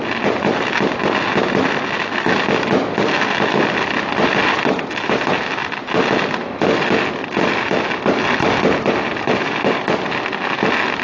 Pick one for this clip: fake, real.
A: real